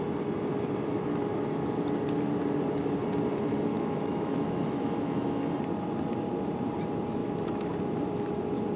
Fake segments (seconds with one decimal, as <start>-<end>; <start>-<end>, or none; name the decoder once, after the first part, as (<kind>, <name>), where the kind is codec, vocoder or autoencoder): 0.9-1.4 (autoencoder, DAC-VAE); 3.7-5.4; 7.2-7.7